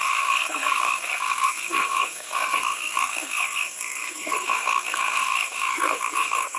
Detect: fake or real fake